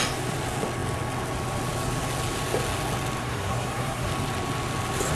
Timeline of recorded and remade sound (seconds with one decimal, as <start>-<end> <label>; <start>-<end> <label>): 0.0-3.2 recorded; 3.2-4.1 remade; 4.1-5.2 recorded